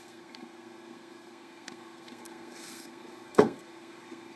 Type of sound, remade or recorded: remade